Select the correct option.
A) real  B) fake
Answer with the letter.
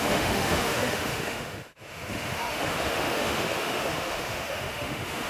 B